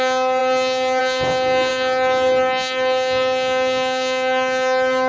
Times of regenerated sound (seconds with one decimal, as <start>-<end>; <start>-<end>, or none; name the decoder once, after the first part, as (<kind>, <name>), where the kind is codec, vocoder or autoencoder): none